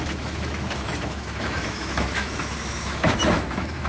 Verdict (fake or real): fake